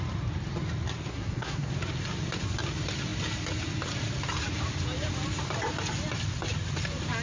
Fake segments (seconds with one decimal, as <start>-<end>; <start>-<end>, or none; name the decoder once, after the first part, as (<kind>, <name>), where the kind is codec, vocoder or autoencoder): 1.1-1.7 (codec, SNAC)